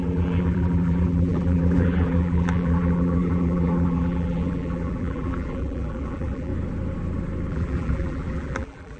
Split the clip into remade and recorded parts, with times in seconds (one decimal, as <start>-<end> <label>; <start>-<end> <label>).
0.0-6.5 remade; 6.5-7.5 recorded; 7.5-9.0 remade